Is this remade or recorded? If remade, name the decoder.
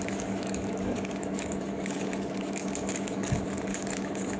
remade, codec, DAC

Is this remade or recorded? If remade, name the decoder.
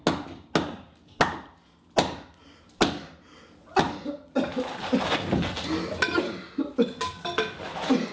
recorded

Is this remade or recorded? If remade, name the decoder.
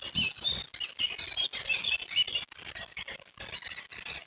recorded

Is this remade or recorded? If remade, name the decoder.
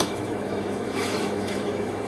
remade, autoencoder, DAC-VAE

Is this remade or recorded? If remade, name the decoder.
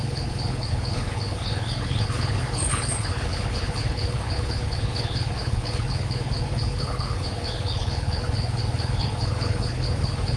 remade, codec, HILCodec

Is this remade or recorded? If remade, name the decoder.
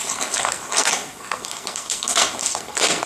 remade, codec, SNAC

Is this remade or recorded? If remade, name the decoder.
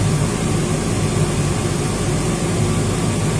recorded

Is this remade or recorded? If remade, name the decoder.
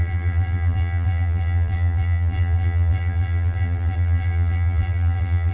remade, vocoder, BigVGAN v2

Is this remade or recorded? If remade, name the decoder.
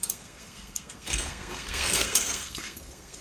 remade, codec, SNAC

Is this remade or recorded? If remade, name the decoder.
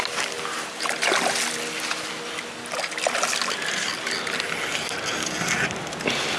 recorded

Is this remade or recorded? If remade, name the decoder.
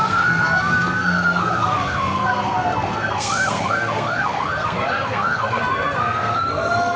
remade, codec, SNAC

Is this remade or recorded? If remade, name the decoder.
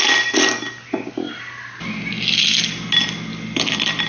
recorded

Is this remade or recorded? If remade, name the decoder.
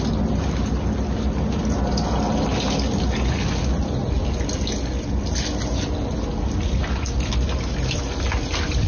recorded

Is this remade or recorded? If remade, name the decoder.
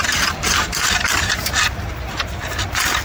remade, vocoder, BigVGAN v2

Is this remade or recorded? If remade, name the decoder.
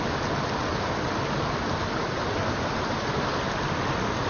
recorded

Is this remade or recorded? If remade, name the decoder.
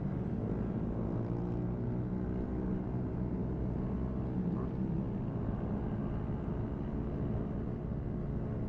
recorded